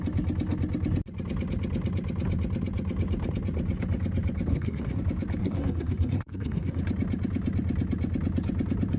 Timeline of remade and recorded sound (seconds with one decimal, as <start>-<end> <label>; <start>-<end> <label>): 0.0-4.5 recorded; 4.5-5.0 remade; 5.0-5.4 recorded; 5.4-6.8 remade; 6.8-9.0 recorded